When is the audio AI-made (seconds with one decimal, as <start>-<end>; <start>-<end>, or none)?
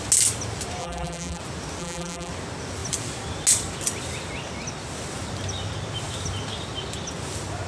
0.8-1.4; 1.8-2.3